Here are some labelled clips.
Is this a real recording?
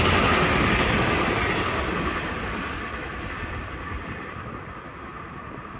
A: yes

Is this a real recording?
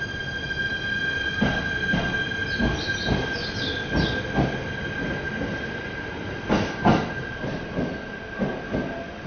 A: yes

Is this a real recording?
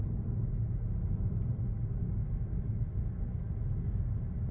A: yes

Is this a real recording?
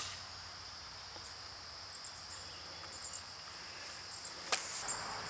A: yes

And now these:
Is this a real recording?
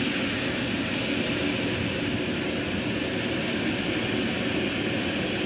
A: yes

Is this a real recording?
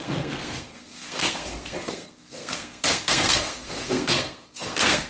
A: no